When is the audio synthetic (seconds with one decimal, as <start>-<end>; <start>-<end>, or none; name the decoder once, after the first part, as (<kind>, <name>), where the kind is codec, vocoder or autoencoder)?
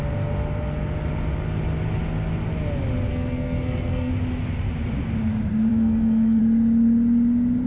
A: 3.1-4.1 (codec, SNAC); 5.7-6.4